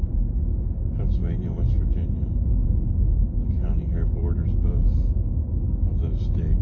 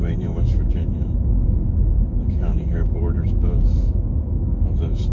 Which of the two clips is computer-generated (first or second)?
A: second